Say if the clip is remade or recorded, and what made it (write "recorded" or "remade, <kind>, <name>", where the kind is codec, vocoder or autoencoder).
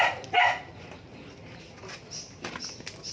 recorded